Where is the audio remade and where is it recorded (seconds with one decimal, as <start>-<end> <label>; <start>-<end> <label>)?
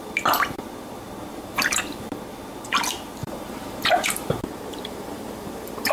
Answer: 0.0-3.2 recorded; 3.2-5.9 remade